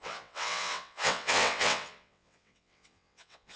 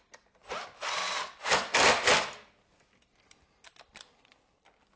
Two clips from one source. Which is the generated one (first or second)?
first